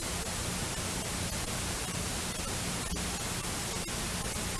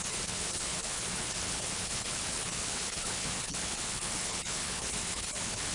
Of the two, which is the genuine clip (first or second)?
first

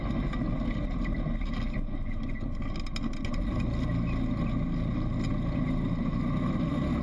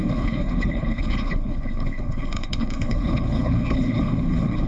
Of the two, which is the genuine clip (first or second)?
first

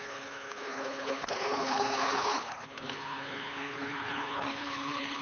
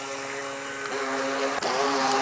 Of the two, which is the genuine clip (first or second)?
second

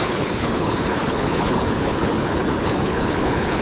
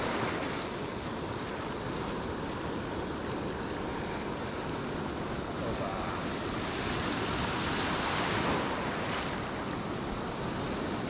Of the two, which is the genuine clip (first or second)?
second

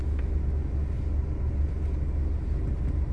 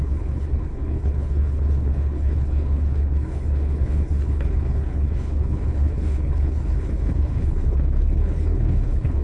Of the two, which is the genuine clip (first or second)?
first